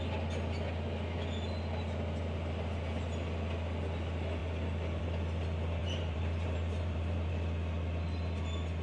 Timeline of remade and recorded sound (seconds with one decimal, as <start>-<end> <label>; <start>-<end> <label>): 0.0-5.8 recorded; 5.8-7.3 remade; 7.3-8.8 recorded